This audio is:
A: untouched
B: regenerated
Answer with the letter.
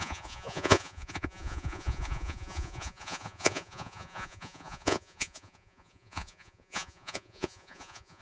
B